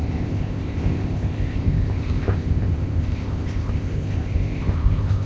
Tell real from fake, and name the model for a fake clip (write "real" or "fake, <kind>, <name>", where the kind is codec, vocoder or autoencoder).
fake, codec, ZipCodec